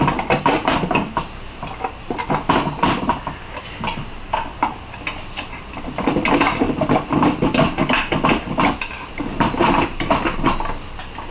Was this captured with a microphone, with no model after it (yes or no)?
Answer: yes